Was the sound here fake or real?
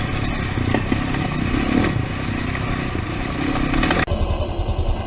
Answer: real